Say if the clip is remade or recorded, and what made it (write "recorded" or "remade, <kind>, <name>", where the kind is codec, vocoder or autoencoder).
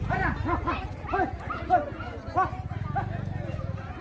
recorded